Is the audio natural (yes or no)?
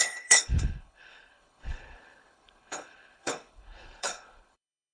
no